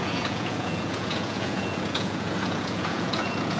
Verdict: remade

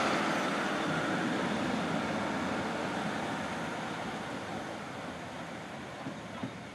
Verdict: recorded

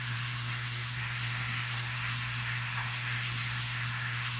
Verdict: remade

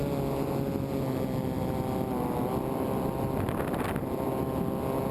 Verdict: recorded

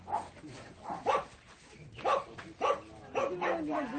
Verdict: recorded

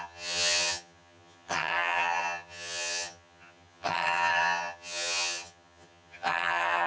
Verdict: remade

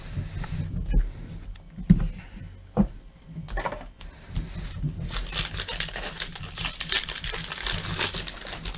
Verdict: recorded